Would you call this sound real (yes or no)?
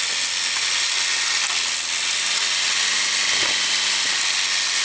yes